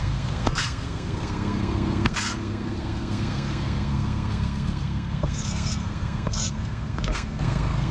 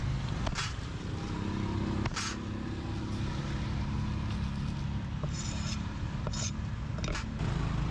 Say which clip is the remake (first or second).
first